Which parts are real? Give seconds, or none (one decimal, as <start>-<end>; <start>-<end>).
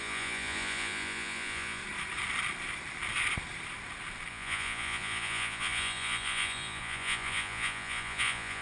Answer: 1.8-4.3